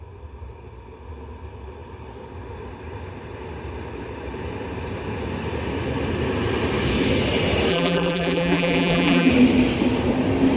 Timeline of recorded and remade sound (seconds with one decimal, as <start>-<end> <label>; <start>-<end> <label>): 0.0-7.7 recorded; 7.7-9.3 remade; 9.3-10.6 recorded